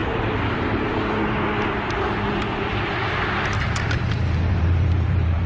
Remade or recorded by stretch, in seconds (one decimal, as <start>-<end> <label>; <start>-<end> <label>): 0.0-2.0 recorded; 2.0-2.7 remade; 2.7-3.6 recorded; 3.6-4.0 remade; 4.0-4.5 recorded; 4.5-5.5 remade